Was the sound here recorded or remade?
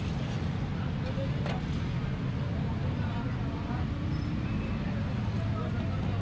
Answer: recorded